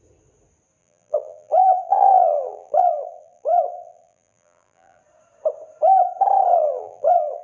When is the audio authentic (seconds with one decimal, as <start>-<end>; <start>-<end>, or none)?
0.0-0.8; 5.0-6.5